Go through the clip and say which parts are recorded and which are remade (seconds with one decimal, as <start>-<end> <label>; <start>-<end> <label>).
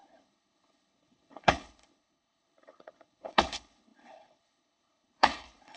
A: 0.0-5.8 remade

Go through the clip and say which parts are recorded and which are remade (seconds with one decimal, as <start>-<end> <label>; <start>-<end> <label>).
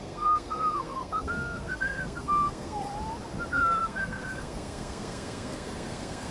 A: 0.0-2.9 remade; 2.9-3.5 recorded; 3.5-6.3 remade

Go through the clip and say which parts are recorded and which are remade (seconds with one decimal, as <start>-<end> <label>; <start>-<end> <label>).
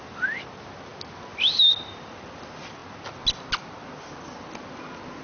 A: 0.0-5.2 recorded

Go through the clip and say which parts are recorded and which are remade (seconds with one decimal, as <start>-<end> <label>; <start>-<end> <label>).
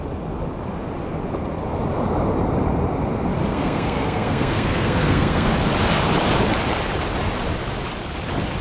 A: 0.0-3.5 recorded; 3.5-5.5 remade; 5.5-8.6 recorded